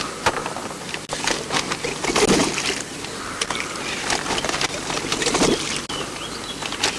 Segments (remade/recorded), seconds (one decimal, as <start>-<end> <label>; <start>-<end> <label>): 0.0-0.4 recorded; 0.4-0.9 remade; 0.9-2.4 recorded; 2.4-4.8 remade; 4.8-7.0 recorded